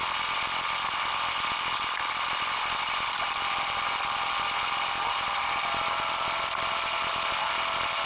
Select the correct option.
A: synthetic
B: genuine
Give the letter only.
B